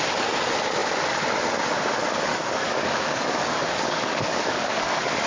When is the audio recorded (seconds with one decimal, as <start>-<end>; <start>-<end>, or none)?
0.0-2.3